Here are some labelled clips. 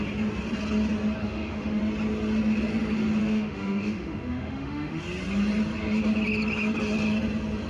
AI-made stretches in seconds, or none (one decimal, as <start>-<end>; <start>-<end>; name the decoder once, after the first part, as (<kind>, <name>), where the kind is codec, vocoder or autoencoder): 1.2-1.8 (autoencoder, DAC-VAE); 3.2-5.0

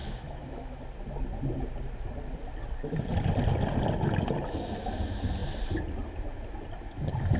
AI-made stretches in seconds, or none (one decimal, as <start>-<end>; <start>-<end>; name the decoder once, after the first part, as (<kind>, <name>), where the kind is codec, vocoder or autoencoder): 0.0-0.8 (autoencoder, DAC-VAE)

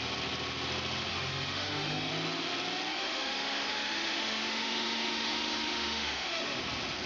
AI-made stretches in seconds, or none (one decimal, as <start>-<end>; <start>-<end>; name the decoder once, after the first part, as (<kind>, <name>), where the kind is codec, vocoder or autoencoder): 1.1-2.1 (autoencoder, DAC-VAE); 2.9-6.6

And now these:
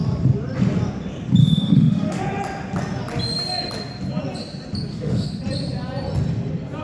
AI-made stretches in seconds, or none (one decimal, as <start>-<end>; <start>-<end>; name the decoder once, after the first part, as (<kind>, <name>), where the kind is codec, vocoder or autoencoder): 1.4-2.2 (autoencoder, DAC-VAE); 4.9-5.4

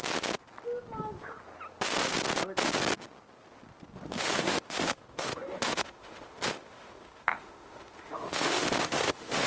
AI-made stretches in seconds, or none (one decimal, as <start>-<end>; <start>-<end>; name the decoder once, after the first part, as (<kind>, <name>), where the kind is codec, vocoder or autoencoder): 4.1-9.5 (autoencoder, DAC-VAE)

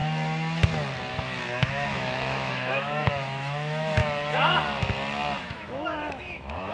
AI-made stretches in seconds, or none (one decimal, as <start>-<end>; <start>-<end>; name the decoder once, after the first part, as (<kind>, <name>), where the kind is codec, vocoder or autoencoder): 1.1-4.0 (autoencoder, DAC-VAE); 5.4-6.7